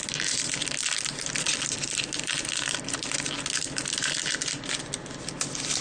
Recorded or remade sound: recorded